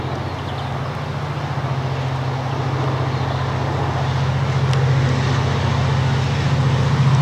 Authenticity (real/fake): real